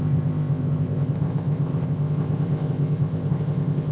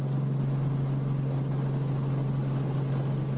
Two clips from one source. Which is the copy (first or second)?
first